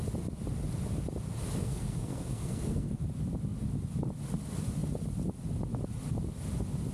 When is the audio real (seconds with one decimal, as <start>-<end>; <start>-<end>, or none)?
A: 0.0-1.6; 3.0-6.9